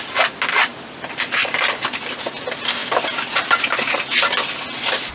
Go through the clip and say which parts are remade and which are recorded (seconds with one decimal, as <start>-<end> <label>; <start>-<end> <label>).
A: 0.0-5.1 recorded

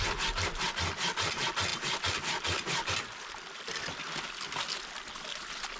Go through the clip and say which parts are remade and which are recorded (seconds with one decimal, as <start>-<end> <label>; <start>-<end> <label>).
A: 0.0-5.8 recorded

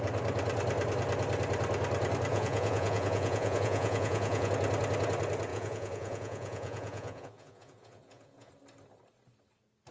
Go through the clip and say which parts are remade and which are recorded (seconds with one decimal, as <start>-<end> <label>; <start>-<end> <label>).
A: 0.0-2.3 recorded; 2.3-4.5 remade; 4.5-5.5 recorded; 5.5-8.5 remade; 8.5-9.9 recorded

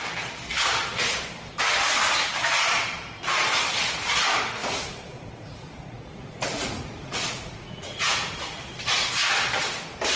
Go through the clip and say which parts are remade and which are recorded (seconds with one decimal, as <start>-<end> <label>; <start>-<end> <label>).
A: 0.0-4.6 recorded; 4.6-8.6 remade; 8.6-10.2 recorded

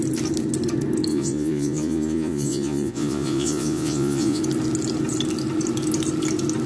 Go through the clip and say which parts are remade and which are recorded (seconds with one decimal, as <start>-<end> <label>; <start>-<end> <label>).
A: 0.0-1.1 recorded; 1.1-4.4 remade; 4.4-6.7 recorded